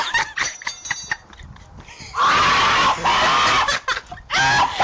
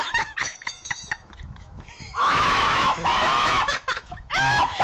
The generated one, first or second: second